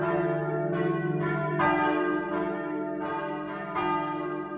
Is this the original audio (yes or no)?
yes